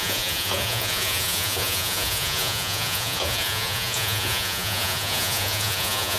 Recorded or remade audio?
remade